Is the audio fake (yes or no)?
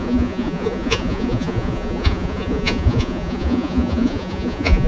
yes